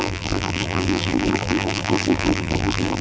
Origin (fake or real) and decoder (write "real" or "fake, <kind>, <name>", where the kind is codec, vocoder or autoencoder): fake, vocoder, BigVGAN v2